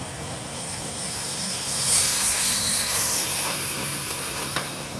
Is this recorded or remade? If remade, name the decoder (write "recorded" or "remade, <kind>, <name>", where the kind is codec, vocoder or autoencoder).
remade, codec, SNAC